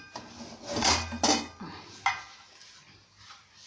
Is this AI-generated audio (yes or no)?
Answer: no